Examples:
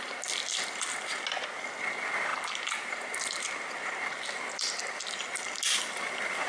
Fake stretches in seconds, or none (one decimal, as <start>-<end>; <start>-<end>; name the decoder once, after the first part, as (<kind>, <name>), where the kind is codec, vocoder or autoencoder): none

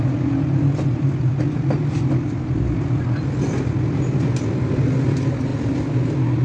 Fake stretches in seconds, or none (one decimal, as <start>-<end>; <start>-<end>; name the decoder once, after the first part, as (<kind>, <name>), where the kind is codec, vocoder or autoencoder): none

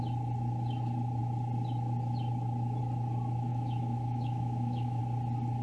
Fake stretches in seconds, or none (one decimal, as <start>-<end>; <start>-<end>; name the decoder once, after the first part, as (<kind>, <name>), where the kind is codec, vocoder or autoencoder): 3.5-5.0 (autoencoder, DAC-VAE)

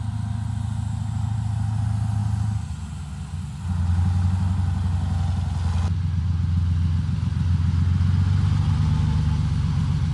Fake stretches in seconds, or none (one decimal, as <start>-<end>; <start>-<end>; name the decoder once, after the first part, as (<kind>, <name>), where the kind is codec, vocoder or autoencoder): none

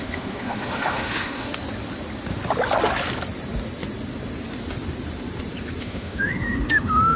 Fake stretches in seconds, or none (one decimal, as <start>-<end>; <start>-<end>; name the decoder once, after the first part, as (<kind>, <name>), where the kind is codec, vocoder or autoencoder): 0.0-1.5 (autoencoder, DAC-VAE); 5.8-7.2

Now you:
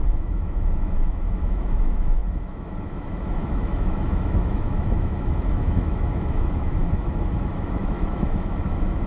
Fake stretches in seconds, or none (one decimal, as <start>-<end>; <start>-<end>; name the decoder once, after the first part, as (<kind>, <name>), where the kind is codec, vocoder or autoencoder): 0.0-9.1 (autoencoder, DAC-VAE)